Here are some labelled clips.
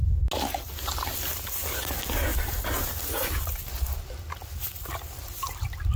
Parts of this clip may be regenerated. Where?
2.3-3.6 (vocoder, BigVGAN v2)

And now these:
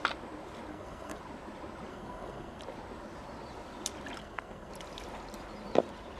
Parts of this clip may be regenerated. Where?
0.7-1.2 (codec, SNAC); 1.9-2.6; 4.2-4.7

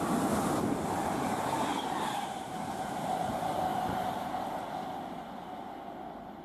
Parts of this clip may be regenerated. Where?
1.7-3.3 (vocoder, BigVGAN v2); 3.7-4.3

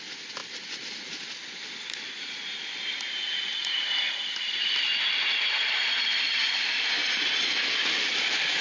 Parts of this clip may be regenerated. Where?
0.4-1.0 (vocoder, BigVGAN v2); 6.3-6.9